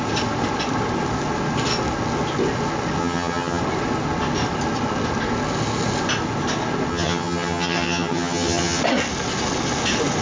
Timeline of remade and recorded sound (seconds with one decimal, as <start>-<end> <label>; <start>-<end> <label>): 0.0-3.0 recorded; 3.0-3.6 remade; 3.6-6.9 recorded; 6.9-8.8 remade; 8.8-10.2 recorded